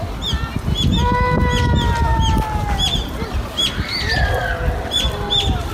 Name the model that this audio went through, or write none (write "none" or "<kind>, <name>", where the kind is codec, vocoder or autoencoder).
none